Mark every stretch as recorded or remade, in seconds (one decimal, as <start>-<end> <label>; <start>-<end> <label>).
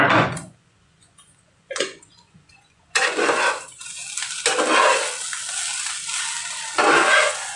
0.0-4.0 remade; 4.0-6.9 recorded; 6.9-7.6 remade